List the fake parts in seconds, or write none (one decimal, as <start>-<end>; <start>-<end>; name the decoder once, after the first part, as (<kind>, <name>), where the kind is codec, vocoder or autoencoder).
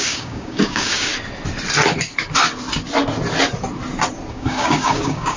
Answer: 0.0-1.1 (codec, DAC); 4.3-5.4